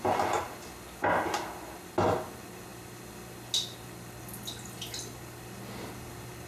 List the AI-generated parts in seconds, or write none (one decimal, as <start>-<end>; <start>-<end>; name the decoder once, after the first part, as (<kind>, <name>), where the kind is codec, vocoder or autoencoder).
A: none

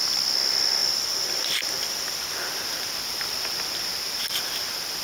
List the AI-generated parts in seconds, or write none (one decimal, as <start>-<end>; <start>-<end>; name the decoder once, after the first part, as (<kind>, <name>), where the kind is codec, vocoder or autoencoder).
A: 0.0-5.0 (vocoder, BigVGAN v2)

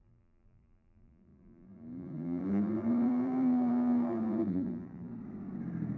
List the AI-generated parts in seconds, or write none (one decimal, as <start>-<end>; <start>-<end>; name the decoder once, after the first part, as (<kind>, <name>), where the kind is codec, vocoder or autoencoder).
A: 0.0-5.1 (vocoder, BigVGAN v2)

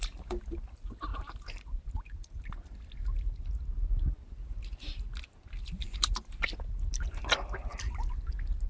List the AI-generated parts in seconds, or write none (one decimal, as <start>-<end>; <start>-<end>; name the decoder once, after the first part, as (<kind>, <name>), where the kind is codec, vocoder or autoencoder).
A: 1.1-2.4 (vocoder, BigVGAN v2); 5.8-6.4

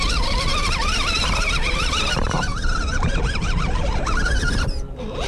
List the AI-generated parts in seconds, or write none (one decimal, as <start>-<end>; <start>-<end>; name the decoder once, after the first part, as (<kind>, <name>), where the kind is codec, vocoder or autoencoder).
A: 2.5-4.0 (vocoder, BigVGAN v2)

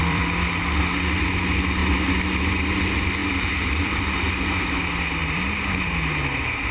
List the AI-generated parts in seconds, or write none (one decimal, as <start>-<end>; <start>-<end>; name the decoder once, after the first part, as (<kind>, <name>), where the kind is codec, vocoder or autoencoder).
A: 0.0-0.6 (vocoder, BigVGAN v2); 3.2-4.0; 5.2-5.9

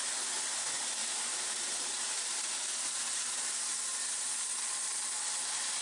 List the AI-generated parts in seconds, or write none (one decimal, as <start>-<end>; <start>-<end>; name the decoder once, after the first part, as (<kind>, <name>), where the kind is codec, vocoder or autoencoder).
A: 1.0-4.5 (vocoder, BigVGAN v2)